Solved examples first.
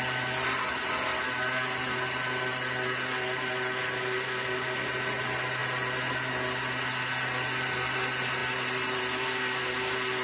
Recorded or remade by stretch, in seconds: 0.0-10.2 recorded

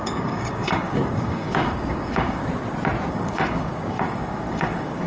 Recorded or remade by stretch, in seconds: 0.0-2.4 remade; 2.4-3.1 recorded; 3.1-5.1 remade

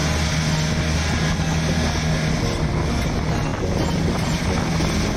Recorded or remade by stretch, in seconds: 0.0-5.2 recorded

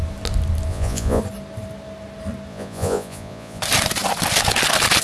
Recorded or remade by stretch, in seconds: 0.0-0.7 recorded; 0.7-1.2 remade; 1.2-2.5 recorded; 2.5-3.6 remade; 3.6-5.0 recorded

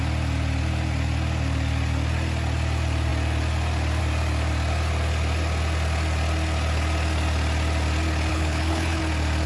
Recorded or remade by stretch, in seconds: 0.0-8.3 recorded; 8.3-9.0 remade; 9.0-9.5 recorded

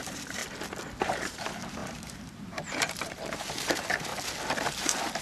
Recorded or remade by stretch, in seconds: 0.0-0.4 remade; 0.4-1.0 recorded; 1.0-4.1 remade; 4.1-4.7 recorded; 4.7-5.2 remade

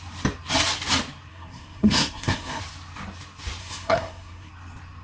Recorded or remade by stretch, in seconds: 0.0-1.3 recorded; 1.3-2.6 remade; 2.6-3.6 recorded; 3.6-4.5 remade; 4.5-5.0 recorded

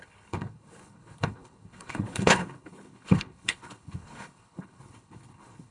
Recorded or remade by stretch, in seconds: 0.0-5.7 remade